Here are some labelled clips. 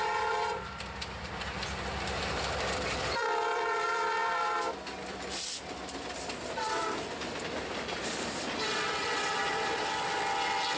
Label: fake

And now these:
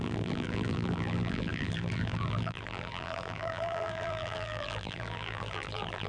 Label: fake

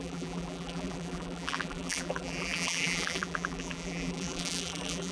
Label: fake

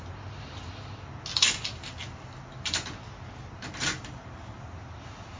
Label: real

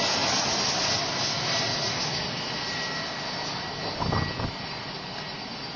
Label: real